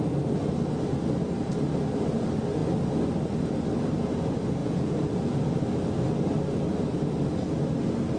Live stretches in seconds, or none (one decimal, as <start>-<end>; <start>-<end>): 0.0-4.6; 5.4-8.2